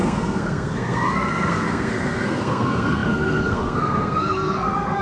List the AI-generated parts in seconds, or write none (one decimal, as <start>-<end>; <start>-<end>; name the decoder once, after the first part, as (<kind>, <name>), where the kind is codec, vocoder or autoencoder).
0.0-5.0 (codec, SNAC)